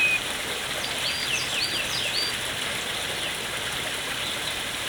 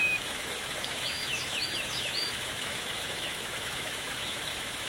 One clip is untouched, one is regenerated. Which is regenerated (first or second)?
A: second